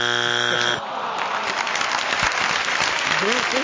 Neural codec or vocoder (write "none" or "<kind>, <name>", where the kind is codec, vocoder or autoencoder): none